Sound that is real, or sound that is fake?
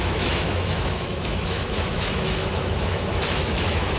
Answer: fake